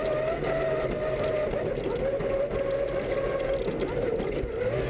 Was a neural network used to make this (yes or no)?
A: no